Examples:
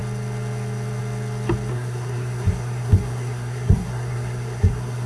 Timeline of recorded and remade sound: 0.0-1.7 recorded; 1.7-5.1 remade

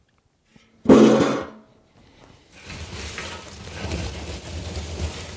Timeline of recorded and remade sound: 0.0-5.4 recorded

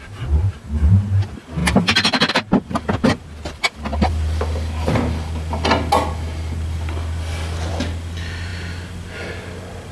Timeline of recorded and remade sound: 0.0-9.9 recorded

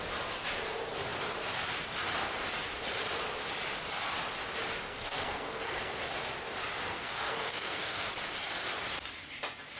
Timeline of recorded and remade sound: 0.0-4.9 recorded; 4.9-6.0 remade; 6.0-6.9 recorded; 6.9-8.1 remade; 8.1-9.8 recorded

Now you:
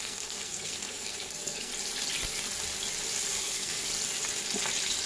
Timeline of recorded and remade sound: 0.0-1.7 remade; 1.7-3.3 recorded; 3.3-3.9 remade; 3.9-5.1 recorded

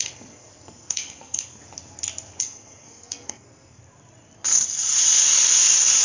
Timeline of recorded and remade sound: 0.0-1.6 remade; 1.6-2.4 recorded; 2.4-3.8 remade; 3.8-6.0 recorded

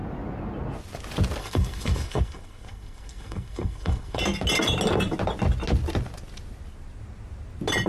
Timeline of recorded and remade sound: 0.0-1.4 recorded; 1.4-4.2 remade; 4.2-7.9 recorded

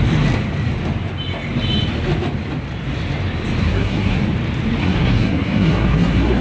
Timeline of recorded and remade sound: 0.0-3.6 recorded; 3.6-4.2 remade; 4.2-4.8 recorded; 4.8-6.4 remade